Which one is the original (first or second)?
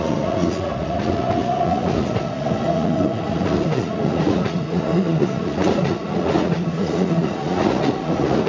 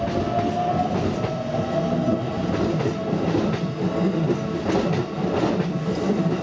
second